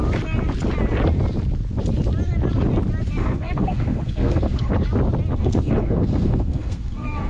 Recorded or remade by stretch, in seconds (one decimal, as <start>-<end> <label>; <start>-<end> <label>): 0.0-3.2 recorded; 3.2-4.7 remade; 4.7-5.3 recorded; 5.3-7.3 remade